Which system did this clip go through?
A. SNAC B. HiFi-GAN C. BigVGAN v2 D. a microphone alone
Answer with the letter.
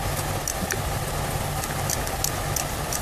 D